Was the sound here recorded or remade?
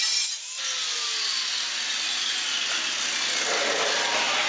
recorded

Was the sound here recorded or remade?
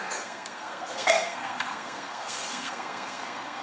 remade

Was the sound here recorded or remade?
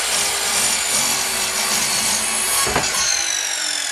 recorded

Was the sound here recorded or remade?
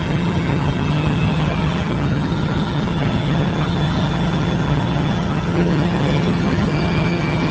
remade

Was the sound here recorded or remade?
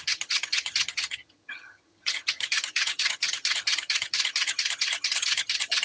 remade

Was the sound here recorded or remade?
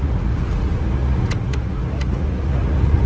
remade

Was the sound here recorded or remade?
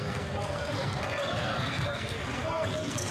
remade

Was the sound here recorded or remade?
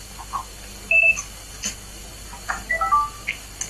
remade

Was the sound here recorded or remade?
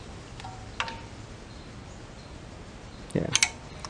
recorded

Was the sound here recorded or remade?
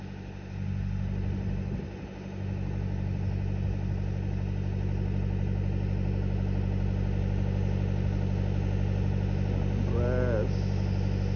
recorded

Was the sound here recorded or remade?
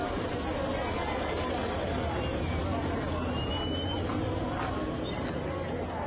recorded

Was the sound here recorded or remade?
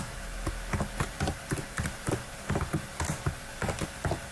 recorded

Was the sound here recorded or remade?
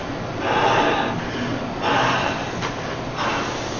recorded